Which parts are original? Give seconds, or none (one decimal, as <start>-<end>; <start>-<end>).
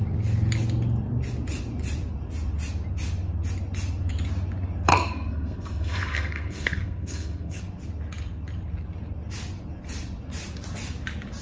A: 0.0-4.9; 7.6-11.4